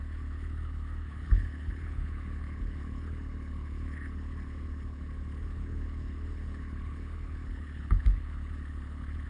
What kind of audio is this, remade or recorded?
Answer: remade